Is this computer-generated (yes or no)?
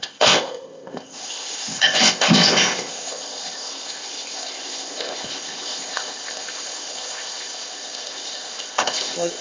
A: yes